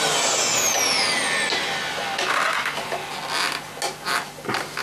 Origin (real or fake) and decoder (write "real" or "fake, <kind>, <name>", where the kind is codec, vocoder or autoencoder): real